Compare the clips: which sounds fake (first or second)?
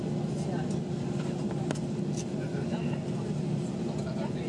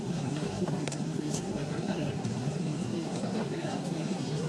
second